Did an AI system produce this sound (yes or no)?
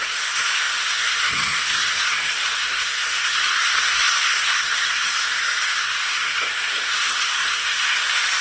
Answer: yes